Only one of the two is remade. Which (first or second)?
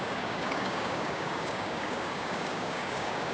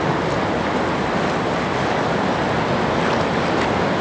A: first